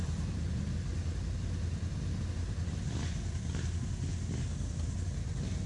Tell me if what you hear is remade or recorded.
recorded